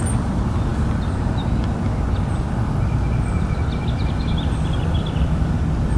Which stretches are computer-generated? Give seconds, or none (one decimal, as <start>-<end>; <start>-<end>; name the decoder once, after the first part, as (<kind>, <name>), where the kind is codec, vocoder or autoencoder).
none